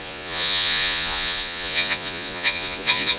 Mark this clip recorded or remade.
remade